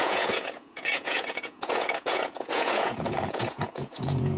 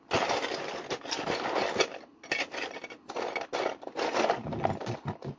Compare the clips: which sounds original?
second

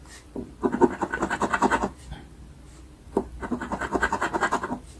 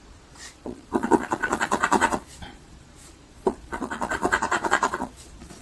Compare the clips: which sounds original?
first